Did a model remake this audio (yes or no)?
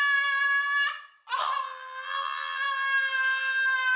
no